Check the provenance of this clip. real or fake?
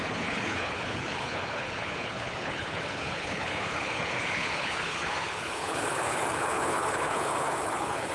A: fake